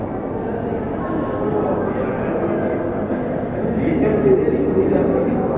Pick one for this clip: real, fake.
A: real